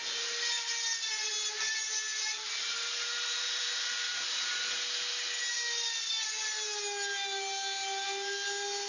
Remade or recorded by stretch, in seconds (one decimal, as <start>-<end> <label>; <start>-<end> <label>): 0.0-2.1 recorded; 2.1-4.5 remade; 4.5-8.9 recorded